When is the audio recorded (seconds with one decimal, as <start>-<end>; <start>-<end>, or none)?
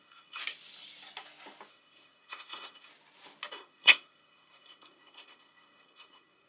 0.4-1.7; 2.9-3.5